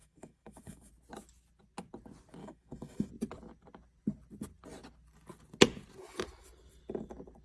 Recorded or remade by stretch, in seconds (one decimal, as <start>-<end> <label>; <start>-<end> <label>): 0.0-0.9 remade; 0.9-2.4 recorded; 2.4-3.1 remade; 3.1-7.4 recorded